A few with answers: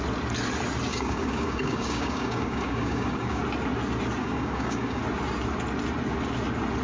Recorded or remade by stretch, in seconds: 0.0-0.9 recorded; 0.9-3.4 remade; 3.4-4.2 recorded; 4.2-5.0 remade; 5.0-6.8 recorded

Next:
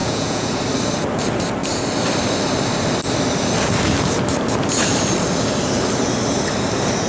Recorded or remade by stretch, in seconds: 0.0-0.5 remade; 0.5-7.1 recorded